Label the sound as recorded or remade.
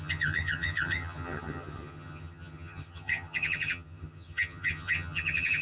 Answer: remade